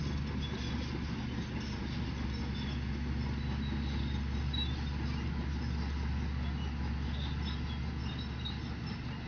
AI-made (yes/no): no